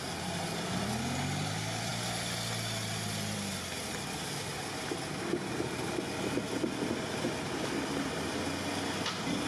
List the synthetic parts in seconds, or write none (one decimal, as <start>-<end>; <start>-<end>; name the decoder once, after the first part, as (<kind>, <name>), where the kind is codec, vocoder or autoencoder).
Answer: none